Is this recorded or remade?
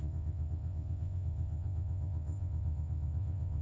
remade